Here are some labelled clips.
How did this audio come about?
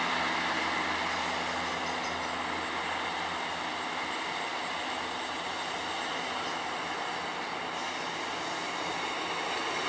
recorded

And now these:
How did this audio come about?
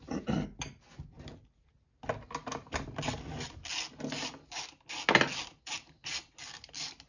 recorded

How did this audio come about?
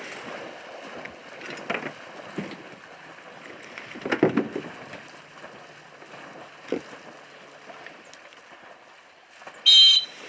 recorded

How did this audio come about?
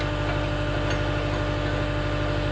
recorded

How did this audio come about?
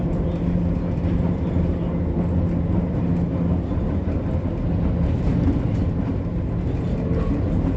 recorded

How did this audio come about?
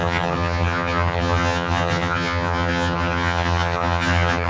remade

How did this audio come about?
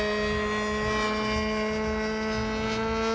recorded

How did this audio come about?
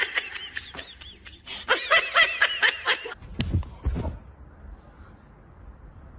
recorded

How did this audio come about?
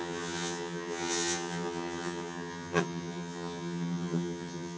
remade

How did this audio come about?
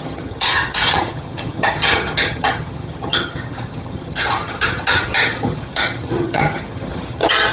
remade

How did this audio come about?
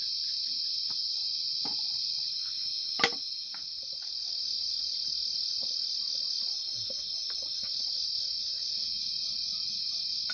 recorded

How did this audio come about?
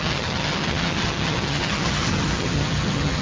remade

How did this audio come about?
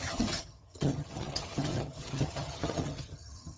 remade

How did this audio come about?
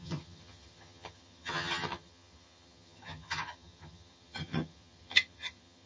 remade